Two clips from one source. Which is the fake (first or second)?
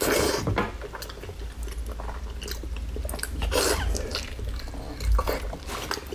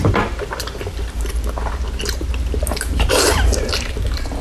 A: second